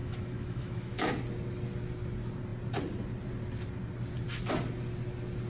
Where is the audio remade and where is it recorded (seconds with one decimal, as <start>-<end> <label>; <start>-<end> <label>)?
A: 0.0-1.1 remade; 1.1-5.5 recorded